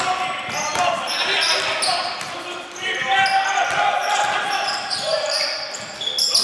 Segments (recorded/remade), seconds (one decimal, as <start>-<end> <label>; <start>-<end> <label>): 0.0-4.0 recorded; 4.0-5.9 remade; 5.9-6.4 recorded